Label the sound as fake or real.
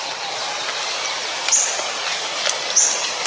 real